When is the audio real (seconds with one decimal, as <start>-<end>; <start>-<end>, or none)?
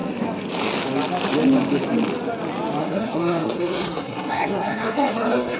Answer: 0.0-2.8